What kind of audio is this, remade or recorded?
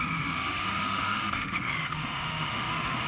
remade